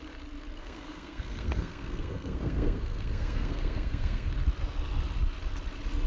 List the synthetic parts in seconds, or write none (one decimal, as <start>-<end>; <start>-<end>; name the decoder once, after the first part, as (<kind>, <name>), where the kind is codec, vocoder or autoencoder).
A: 0.6-4.3 (codec, SNAC)